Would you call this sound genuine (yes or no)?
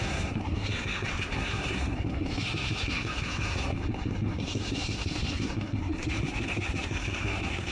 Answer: no